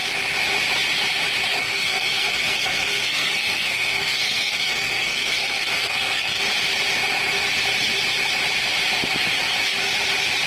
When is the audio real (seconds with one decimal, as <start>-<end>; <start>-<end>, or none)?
0.0-1.6; 6.4-10.5